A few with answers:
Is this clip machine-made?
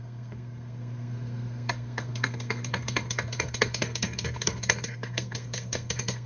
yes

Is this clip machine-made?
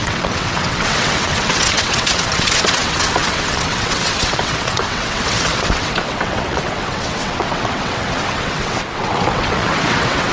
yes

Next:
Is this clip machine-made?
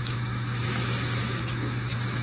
yes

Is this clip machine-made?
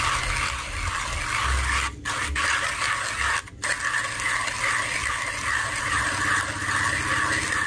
no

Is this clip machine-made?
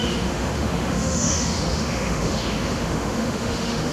yes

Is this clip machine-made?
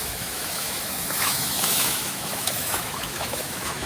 yes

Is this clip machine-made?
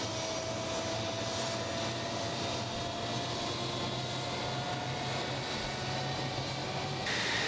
no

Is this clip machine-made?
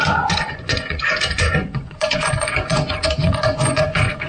yes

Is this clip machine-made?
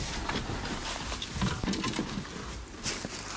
yes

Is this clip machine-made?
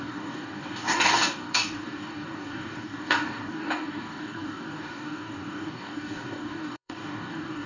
yes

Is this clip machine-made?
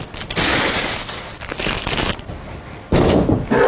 no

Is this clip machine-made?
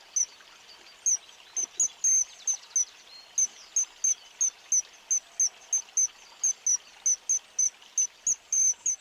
no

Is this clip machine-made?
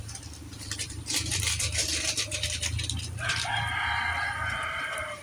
yes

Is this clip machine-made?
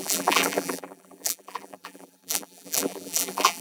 yes